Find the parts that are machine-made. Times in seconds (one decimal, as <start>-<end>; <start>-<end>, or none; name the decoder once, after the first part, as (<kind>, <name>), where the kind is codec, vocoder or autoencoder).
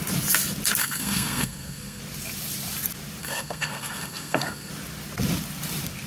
0.8-2.0 (codec, SNAC); 3.2-4.7